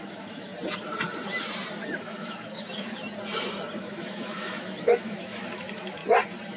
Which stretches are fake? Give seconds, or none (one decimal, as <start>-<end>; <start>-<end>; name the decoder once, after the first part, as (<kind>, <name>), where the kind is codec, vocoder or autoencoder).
0.0-0.5 (autoencoder, DAC-VAE); 2.0-3.0; 3.8-6.0